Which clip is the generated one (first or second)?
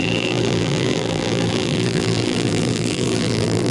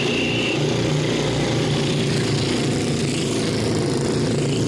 first